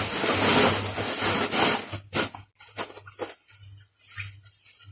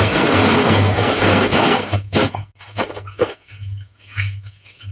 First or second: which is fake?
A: second